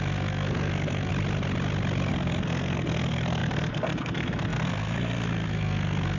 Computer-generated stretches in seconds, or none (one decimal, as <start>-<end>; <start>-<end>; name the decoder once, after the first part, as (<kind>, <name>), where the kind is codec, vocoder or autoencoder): 0.0-1.1 (codec, SNAC); 2.1-6.2